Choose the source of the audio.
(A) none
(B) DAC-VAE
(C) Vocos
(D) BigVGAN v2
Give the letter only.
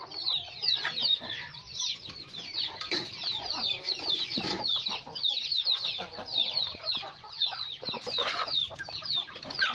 C